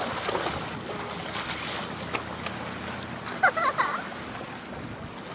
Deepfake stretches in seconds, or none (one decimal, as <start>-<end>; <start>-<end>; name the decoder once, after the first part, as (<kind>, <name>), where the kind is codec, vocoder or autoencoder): none